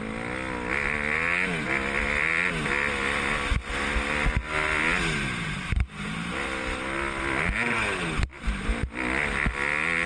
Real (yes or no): yes